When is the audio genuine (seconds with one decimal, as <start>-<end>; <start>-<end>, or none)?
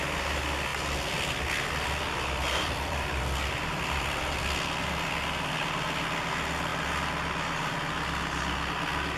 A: 0.0-0.7; 4.0-9.2